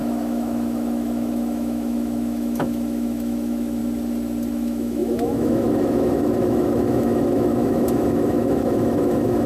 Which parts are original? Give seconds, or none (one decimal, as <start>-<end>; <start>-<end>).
3.8-4.5